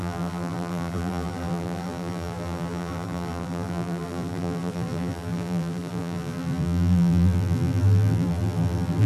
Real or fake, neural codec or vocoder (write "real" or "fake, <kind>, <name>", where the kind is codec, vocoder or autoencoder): fake, vocoder, BigVGAN v2